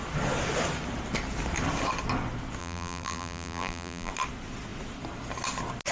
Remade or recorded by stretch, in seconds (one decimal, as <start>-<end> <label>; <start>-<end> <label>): 0.0-2.6 recorded; 2.6-4.1 remade; 4.1-5.9 recorded